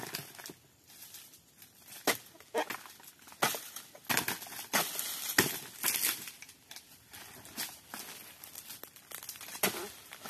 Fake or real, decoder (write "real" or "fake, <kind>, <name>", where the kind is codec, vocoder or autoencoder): real